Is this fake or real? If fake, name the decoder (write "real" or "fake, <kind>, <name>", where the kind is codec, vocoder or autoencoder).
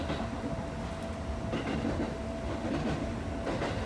real